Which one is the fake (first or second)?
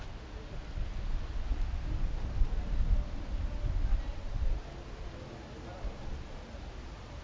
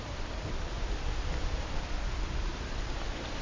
second